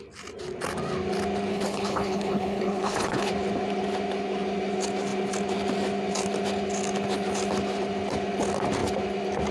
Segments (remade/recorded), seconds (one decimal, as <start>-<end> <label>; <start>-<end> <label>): 0.0-1.5 recorded; 1.5-3.3 remade; 3.3-9.5 recorded